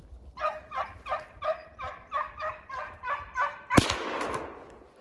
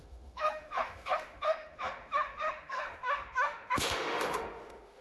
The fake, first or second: second